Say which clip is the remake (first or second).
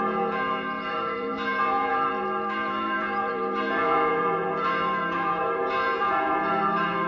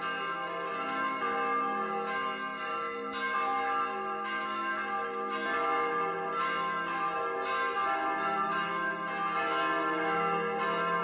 first